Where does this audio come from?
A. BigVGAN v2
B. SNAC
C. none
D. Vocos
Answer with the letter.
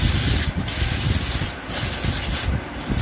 C